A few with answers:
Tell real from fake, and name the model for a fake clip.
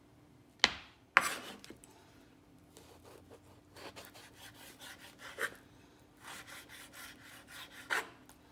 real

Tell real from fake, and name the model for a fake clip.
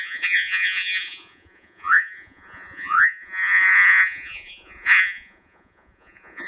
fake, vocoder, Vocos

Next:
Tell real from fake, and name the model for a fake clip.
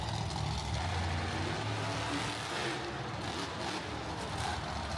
real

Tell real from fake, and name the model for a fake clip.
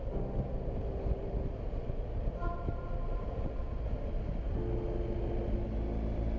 real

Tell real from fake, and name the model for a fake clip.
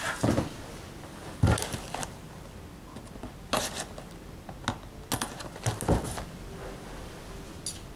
real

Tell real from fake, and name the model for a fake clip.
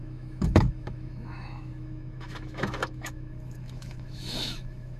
fake, autoencoder, DAC-VAE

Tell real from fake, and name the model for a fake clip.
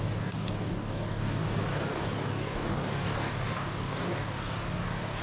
fake, codec, DAC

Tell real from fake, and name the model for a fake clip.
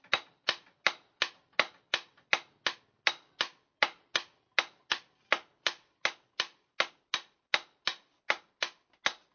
real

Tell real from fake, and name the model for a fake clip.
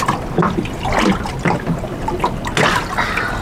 real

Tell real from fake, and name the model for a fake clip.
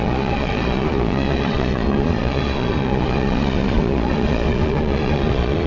fake, vocoder, Vocos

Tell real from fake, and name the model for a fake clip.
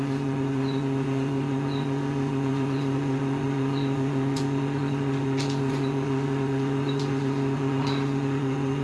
fake, vocoder, Vocos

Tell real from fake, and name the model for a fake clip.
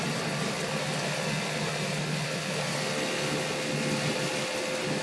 real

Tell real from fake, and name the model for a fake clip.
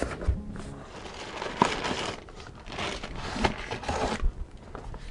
real